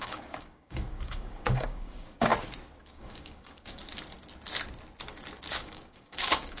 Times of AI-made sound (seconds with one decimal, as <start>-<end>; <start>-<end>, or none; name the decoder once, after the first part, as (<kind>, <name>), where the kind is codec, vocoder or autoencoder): 0.0-2.3 (codec, DAC); 2.9-3.8; 5.6-6.6